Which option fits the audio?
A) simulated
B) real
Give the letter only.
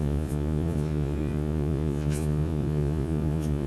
A